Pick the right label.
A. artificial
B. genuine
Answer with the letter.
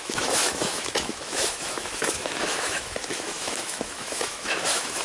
A